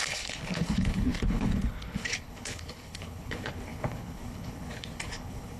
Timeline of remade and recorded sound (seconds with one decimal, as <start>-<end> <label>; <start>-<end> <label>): 0.0-5.6 remade